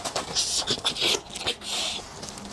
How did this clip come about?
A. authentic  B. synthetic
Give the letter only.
A